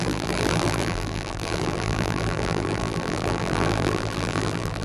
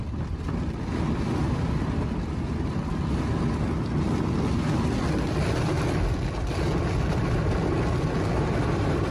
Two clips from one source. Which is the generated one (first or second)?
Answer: first